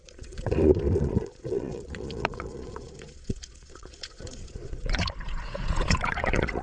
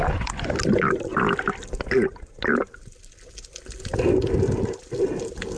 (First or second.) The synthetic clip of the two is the first